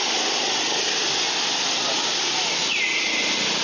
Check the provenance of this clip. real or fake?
real